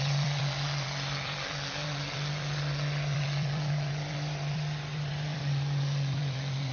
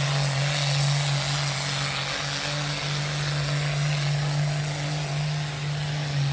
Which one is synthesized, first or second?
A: first